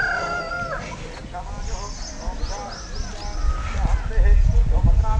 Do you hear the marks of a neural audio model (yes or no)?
no